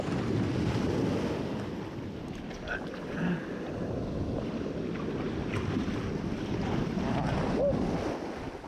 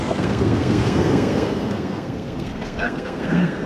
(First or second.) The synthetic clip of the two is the second